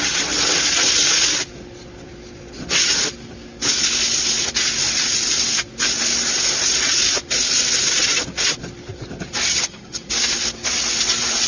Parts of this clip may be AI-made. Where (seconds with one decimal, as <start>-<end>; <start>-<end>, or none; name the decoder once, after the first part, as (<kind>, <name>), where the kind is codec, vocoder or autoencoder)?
9.5-10.1 (vocoder, HiFi-GAN)